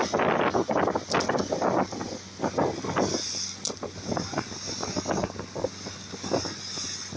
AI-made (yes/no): no